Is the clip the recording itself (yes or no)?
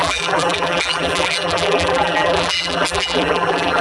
no